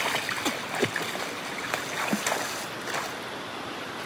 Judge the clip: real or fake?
real